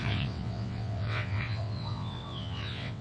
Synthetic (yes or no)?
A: yes